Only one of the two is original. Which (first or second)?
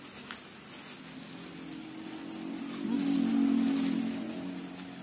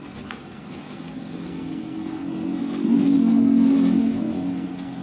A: first